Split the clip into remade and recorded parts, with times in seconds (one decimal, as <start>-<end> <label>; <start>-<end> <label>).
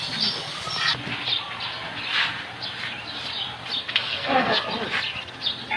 0.0-3.8 recorded; 3.8-4.6 remade; 4.6-5.8 recorded